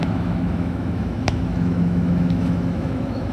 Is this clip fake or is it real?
fake